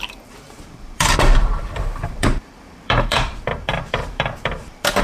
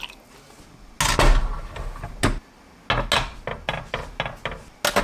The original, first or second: second